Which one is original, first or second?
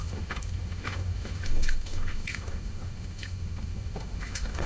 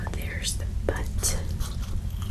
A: second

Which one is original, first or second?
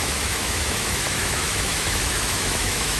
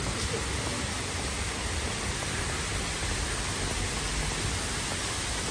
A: second